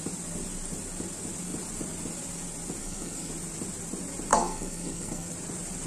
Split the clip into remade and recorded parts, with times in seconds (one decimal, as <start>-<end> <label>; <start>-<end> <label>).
0.0-2.8 recorded; 2.8-3.3 remade; 3.3-4.3 recorded; 4.3-5.3 remade; 5.3-5.9 recorded

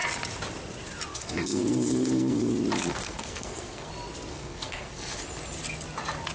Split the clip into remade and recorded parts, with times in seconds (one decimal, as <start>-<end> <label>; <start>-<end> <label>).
0.0-1.1 recorded; 1.1-2.5 remade; 2.5-2.9 recorded; 2.9-3.9 remade; 3.9-4.3 recorded; 4.3-5.2 remade; 5.2-6.3 recorded

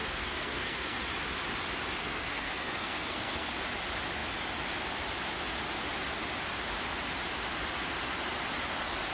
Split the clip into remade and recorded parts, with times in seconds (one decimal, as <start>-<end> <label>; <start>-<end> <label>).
0.0-1.0 remade; 1.0-2.0 recorded; 2.0-3.5 remade; 3.5-9.1 recorded